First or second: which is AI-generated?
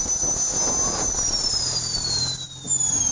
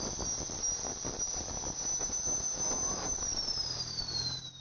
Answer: second